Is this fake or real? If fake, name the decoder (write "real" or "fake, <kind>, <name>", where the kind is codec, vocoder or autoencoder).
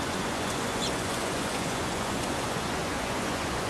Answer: fake, vocoder, Vocos